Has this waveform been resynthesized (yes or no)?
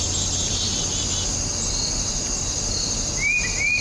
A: no